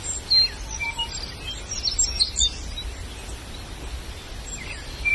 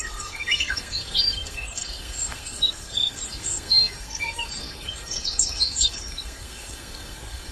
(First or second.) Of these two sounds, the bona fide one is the first